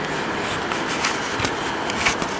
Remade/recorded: recorded